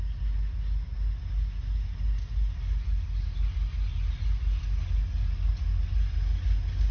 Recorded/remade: recorded